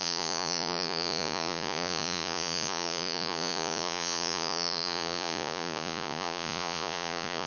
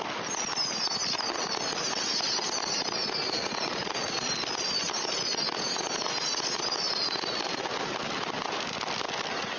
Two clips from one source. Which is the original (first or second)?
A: second